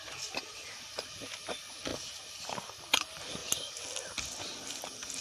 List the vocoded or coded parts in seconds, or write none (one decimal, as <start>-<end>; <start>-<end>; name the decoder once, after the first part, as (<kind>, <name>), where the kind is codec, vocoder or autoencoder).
none